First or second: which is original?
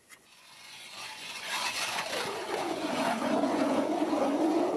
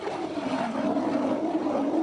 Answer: second